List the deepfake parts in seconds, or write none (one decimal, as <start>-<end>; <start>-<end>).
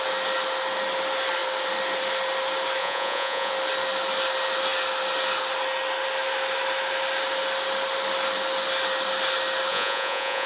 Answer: 2.8-3.5; 9.7-10.5